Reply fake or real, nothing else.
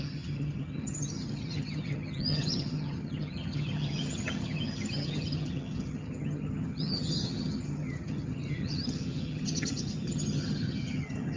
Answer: fake